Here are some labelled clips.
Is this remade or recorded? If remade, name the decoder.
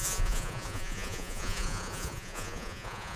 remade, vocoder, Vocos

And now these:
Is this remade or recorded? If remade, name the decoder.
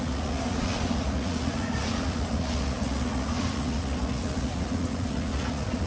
remade, vocoder, Vocos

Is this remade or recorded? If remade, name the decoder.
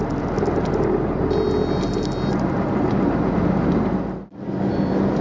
recorded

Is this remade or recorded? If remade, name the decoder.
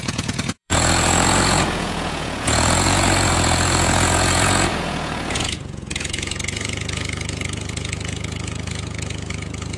remade, vocoder, Vocos